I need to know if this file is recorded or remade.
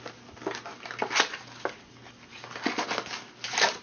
recorded